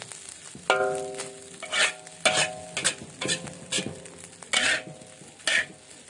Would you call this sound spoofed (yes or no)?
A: no